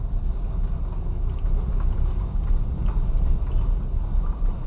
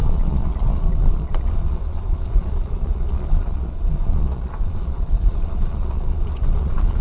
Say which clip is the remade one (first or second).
second